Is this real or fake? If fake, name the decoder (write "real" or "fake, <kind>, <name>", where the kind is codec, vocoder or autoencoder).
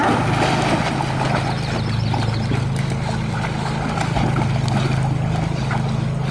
real